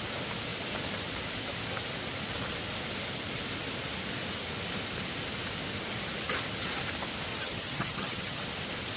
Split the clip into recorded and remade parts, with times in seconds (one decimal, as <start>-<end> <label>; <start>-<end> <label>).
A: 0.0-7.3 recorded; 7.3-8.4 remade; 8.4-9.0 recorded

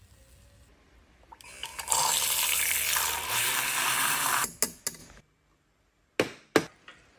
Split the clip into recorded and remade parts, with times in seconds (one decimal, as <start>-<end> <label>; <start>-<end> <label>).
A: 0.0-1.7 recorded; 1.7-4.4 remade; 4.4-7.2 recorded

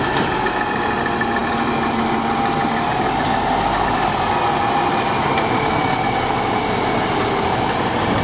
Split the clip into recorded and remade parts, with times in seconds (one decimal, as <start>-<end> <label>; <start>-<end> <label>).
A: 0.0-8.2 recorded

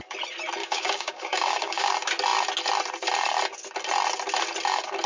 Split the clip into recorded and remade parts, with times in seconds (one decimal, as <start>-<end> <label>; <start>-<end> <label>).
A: 0.0-0.6 recorded; 0.6-1.9 remade; 1.9-5.1 recorded